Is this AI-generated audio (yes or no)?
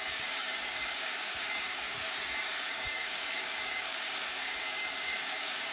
yes